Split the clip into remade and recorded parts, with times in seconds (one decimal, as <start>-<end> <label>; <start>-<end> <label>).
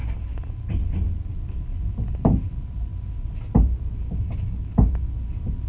0.0-5.7 recorded